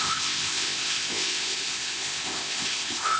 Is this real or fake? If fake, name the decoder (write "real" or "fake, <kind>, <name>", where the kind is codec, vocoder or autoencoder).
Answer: fake, codec, ZipCodec